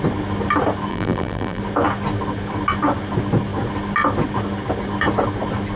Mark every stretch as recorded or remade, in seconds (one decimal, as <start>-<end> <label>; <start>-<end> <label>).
0.0-0.9 recorded; 0.9-1.6 remade; 1.6-5.8 recorded